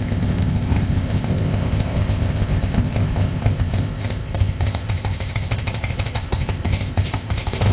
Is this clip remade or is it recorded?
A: remade